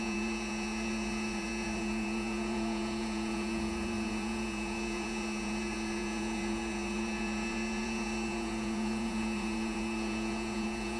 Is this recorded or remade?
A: remade